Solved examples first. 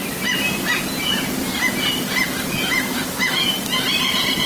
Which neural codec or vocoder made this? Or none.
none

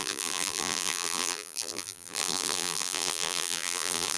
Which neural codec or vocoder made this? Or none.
vocoder, BigVGAN v2